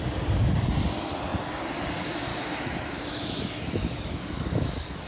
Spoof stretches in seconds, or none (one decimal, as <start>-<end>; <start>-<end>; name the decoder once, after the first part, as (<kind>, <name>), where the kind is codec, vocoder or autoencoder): 2.3-5.1 (autoencoder, DAC-VAE)